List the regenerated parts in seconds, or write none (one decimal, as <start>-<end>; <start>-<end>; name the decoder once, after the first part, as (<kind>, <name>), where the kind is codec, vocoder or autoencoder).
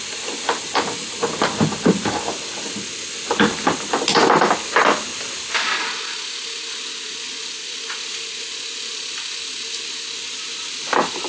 5.1-6.6 (vocoder, BigVGAN v2); 7.6-9.4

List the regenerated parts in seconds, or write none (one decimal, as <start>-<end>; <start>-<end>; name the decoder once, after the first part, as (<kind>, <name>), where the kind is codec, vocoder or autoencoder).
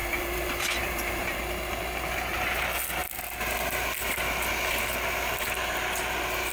0.0-1.4 (vocoder, BigVGAN v2)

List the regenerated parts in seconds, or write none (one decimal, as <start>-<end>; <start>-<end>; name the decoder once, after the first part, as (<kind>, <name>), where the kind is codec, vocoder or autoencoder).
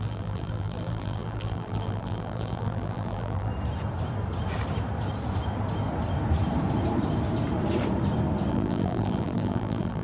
0.0-3.5 (vocoder, BigVGAN v2); 8.5-10.0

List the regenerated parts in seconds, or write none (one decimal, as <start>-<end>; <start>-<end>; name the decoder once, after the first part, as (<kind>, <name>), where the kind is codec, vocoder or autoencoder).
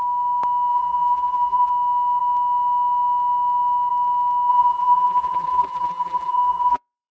0.7-1.7 (vocoder, BigVGAN v2); 4.5-7.1